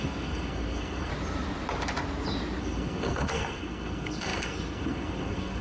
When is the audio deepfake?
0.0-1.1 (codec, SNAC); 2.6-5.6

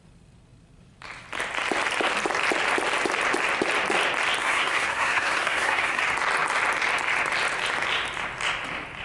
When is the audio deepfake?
4.4-6.0 (codec, SNAC)

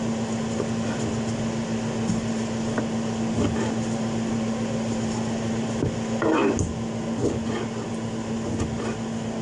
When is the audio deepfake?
none